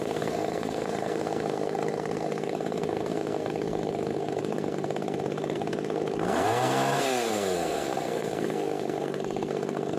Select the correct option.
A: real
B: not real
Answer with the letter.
B